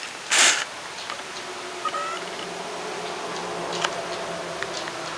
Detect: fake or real real